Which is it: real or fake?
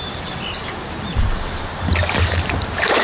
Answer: real